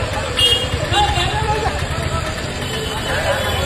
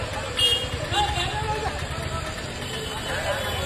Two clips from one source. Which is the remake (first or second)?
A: first